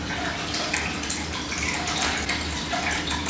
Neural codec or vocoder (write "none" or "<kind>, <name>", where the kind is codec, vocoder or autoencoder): none